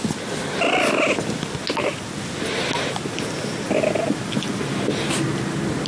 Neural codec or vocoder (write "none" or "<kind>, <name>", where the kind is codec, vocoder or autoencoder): none